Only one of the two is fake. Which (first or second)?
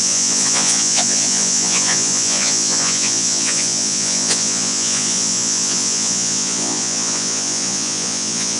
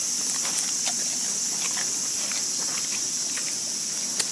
first